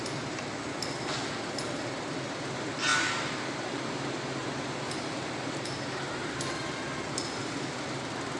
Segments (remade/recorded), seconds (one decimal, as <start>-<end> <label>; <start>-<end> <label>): 0.0-2.9 recorded; 2.9-3.8 remade; 3.8-4.4 recorded; 4.4-6.4 remade; 6.4-8.4 recorded